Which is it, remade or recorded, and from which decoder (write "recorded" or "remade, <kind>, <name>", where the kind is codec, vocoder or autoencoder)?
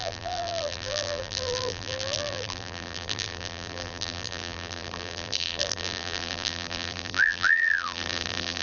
remade, vocoder, BigVGAN v2